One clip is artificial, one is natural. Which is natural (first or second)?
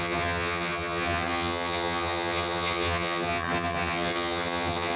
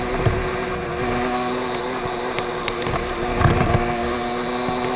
second